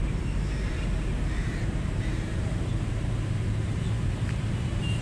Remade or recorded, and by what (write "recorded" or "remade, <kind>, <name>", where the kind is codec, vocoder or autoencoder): remade, vocoder, BigVGAN v2